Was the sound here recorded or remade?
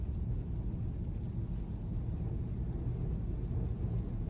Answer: recorded